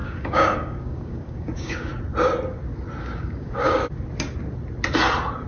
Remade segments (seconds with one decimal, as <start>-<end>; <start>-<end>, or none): 0.0-1.9; 3.0-3.8

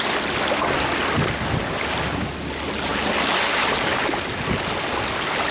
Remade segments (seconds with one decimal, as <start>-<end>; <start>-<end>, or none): none

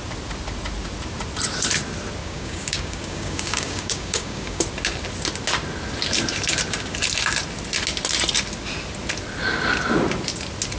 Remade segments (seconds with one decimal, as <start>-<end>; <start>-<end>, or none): 2.2-4.6

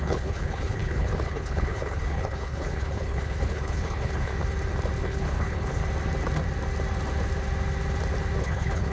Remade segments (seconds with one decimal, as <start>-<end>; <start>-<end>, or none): 0.0-4.3; 5.0-5.8; 8.4-8.9

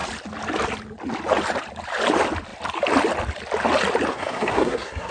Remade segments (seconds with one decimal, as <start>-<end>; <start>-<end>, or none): 4.1-5.1

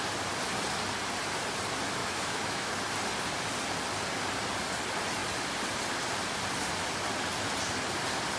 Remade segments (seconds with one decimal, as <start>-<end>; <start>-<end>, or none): 2.0-2.7

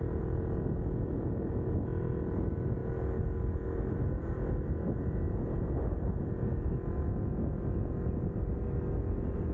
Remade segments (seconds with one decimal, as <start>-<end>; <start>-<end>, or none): none

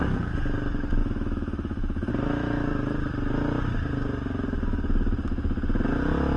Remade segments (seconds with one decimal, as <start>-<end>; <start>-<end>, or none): 1.0-2.1